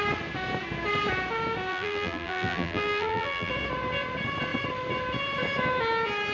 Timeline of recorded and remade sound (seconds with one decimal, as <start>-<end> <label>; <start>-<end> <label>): 0.0-1.7 recorded; 1.7-3.5 remade; 3.5-6.3 recorded